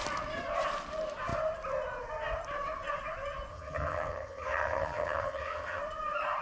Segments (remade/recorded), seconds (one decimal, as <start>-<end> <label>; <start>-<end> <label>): 0.0-3.5 recorded; 3.5-5.8 remade; 5.8-6.4 recorded